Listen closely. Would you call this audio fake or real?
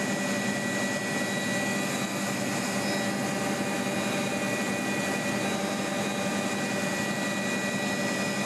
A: real